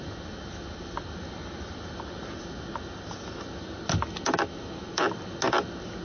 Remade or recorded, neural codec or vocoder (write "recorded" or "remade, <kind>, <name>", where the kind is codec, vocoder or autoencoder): recorded